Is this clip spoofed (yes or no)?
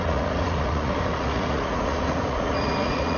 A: yes